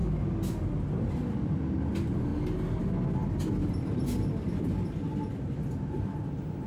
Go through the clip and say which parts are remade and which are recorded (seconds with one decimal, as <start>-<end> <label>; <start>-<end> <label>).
0.0-6.7 recorded